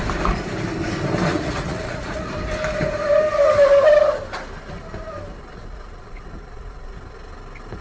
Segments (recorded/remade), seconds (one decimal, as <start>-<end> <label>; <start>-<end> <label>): 0.0-1.3 recorded; 1.3-2.3 remade; 2.3-5.5 recorded; 5.5-7.0 remade; 7.0-7.8 recorded